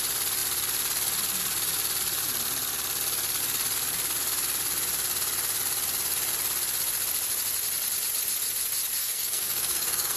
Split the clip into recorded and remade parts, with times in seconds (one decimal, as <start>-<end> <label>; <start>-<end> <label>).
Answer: 0.0-9.0 recorded; 9.0-10.2 remade